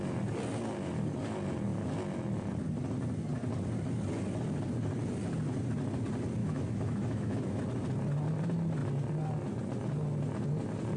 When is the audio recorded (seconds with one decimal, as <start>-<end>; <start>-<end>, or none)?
0.0-6.4; 7.6-11.0